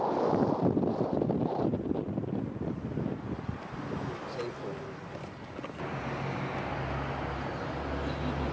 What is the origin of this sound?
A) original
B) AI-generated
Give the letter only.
A